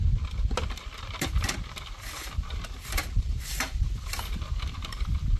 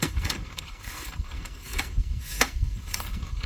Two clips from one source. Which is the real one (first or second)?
first